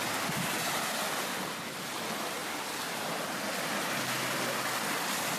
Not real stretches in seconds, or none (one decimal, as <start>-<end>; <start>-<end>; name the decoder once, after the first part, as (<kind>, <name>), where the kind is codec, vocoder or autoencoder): none